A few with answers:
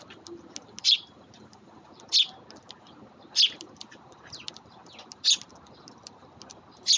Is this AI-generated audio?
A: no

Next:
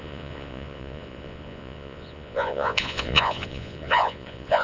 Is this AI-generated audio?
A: yes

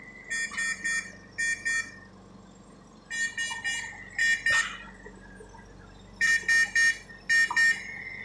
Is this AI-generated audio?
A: no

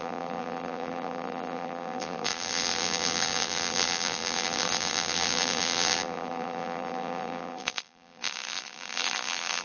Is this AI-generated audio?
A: yes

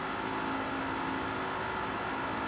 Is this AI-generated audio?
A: no